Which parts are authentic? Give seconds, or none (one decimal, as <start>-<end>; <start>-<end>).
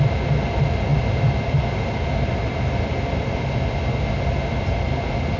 0.0-5.4